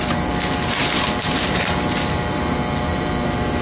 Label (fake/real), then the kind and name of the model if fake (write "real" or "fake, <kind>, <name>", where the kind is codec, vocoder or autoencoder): fake, vocoder, BigVGAN v2